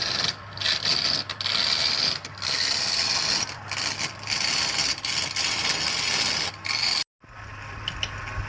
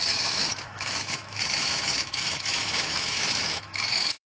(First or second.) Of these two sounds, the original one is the first